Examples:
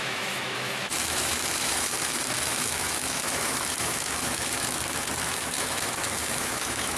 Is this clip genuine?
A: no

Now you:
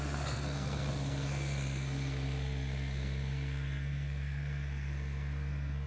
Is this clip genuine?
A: no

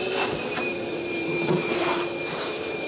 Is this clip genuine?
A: no